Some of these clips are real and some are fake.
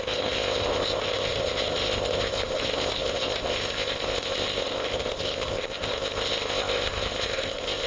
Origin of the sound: fake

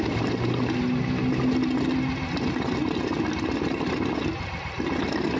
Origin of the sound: real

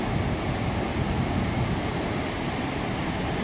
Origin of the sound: real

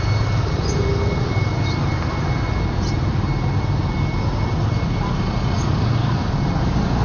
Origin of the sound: real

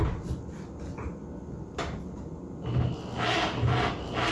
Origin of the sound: real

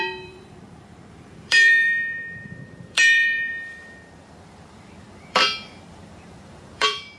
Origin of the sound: fake